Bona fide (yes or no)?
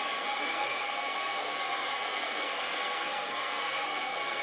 no